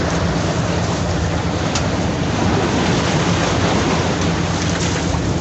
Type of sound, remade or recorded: recorded